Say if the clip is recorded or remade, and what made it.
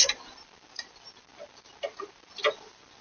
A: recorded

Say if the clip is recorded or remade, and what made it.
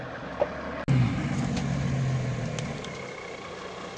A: recorded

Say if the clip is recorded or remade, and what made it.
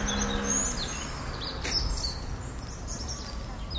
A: recorded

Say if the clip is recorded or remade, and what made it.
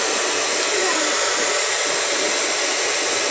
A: recorded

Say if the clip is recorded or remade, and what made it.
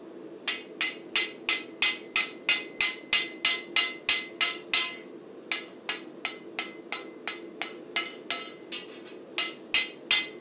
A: recorded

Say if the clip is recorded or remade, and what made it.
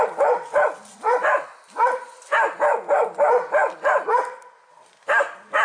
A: recorded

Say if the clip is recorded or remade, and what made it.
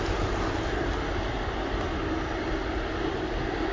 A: recorded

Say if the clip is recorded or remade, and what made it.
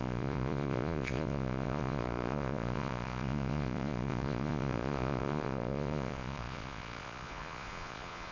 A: remade, vocoder, Vocos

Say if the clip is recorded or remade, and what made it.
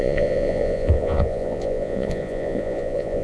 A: remade, vocoder, Vocos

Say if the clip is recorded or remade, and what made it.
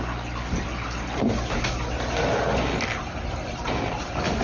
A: recorded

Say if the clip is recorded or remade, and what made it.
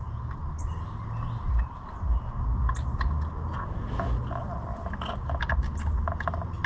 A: recorded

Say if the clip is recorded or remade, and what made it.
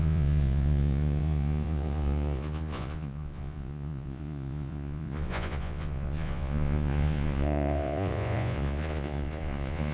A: remade, vocoder, Vocos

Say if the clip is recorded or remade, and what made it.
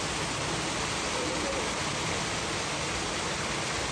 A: recorded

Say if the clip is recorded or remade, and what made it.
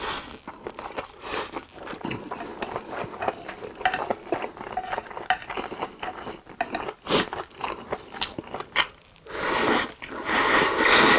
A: recorded